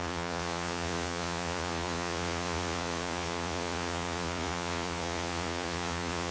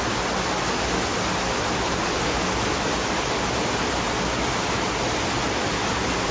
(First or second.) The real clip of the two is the second